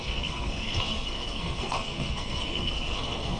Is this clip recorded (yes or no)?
no